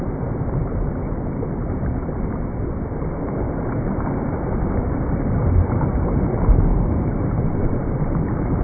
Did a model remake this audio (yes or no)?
no